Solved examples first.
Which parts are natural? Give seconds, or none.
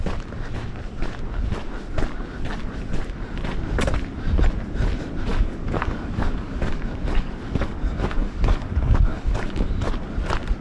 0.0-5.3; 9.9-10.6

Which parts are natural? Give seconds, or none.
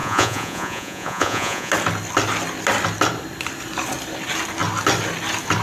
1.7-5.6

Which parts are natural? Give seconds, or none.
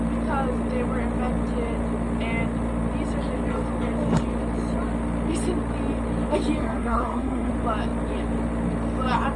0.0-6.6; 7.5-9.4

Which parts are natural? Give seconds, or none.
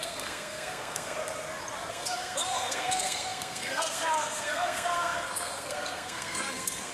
1.2-1.9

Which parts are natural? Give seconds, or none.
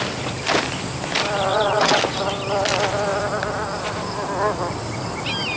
0.0-1.5; 2.0-5.6